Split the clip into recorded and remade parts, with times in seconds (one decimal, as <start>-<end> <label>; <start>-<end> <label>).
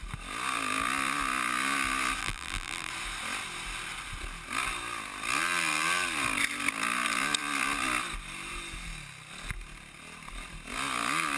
0.0-2.2 recorded; 2.2-2.9 remade; 2.9-11.4 recorded